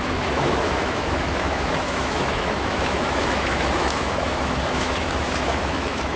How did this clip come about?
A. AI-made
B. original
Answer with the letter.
A